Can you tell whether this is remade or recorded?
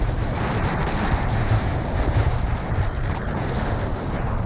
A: recorded